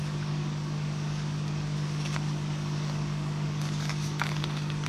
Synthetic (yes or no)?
yes